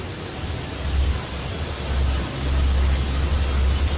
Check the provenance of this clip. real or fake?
real